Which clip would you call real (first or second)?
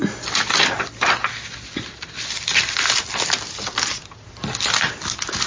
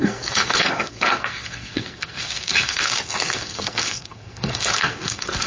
first